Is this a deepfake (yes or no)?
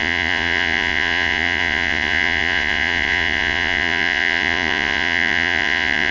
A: yes